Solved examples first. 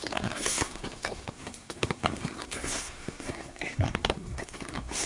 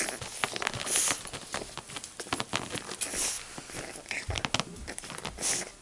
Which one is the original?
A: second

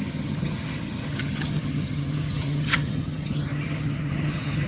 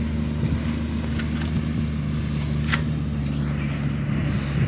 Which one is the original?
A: second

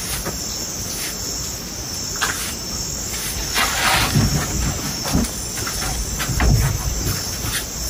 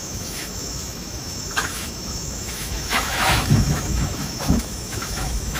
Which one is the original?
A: first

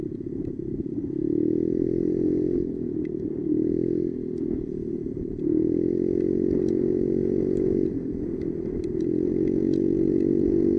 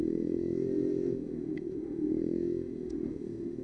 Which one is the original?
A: first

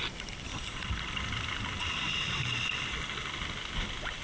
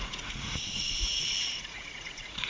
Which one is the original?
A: first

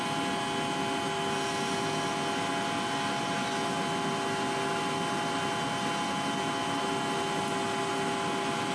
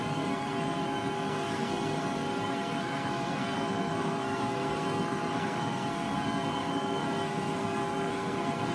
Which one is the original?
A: first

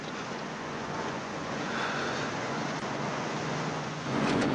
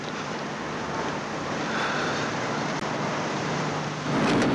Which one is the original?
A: second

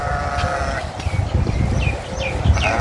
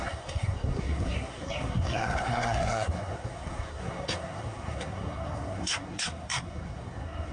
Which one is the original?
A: first